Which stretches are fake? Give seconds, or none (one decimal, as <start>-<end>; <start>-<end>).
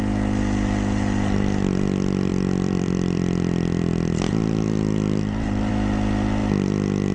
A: 2.3-5.7